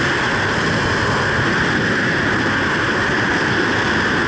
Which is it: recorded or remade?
recorded